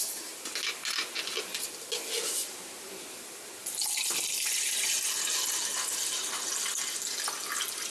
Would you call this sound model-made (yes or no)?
no